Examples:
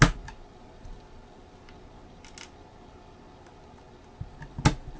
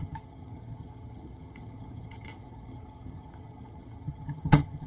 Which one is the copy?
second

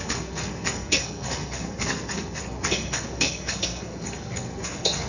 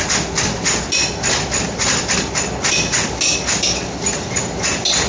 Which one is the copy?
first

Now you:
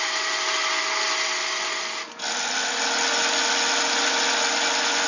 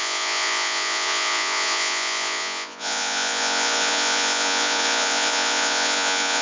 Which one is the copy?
second